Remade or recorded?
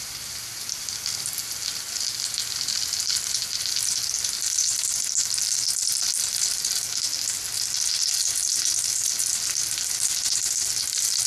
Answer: recorded